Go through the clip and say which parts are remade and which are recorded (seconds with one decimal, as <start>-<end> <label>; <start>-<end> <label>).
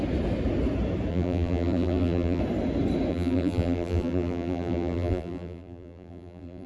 0.0-1.1 recorded; 1.1-2.4 remade; 2.4-3.1 recorded; 3.1-6.7 remade